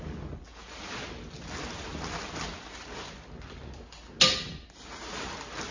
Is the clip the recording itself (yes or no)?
yes